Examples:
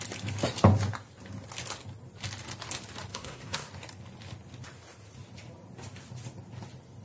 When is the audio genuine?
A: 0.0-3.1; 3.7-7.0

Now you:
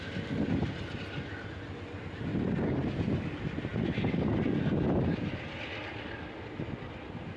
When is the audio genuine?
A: 0.0-7.4

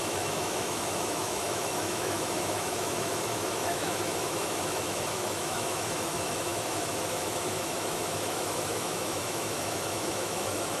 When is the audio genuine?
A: none

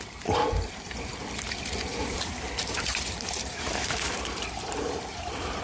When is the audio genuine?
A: 0.0-1.9

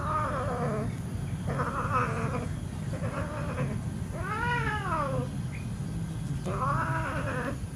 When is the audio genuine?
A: 0.0-7.8

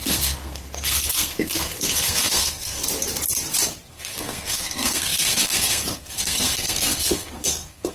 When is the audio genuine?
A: 2.8-3.9